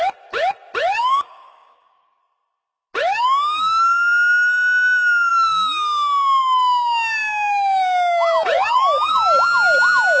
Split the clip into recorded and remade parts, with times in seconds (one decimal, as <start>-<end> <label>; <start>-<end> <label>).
0.0-1.0 recorded; 1.0-2.2 remade; 2.2-10.2 recorded

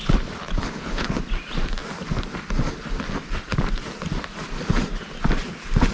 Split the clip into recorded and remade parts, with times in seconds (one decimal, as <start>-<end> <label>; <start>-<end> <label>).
0.0-0.4 recorded; 0.4-1.2 remade; 1.2-5.9 recorded

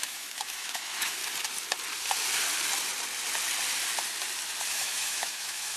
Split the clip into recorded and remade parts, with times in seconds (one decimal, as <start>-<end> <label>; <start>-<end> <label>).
0.0-1.2 remade; 1.2-4.7 recorded; 4.7-5.8 remade

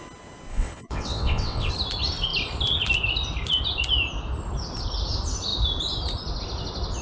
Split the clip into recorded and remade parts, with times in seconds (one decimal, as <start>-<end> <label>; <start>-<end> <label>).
0.0-0.5 recorded; 0.5-1.7 remade; 1.7-7.0 recorded

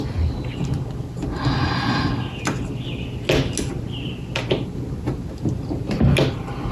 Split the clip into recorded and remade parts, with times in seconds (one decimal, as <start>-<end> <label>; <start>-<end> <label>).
0.0-6.7 recorded

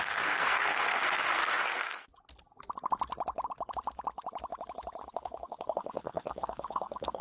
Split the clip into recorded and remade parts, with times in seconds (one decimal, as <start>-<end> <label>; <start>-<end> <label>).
0.0-2.1 remade; 2.1-5.1 recorded; 5.1-7.2 remade

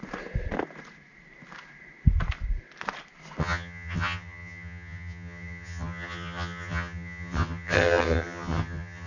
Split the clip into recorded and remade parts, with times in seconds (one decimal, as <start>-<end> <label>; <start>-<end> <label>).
0.0-3.4 recorded; 3.4-9.1 remade

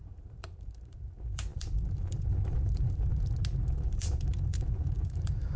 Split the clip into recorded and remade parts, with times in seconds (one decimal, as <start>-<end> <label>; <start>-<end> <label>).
0.0-3.1 remade; 3.1-3.7 recorded; 3.7-5.6 remade